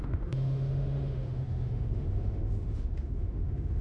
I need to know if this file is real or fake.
fake